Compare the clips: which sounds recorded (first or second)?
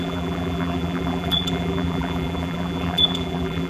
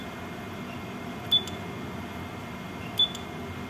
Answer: second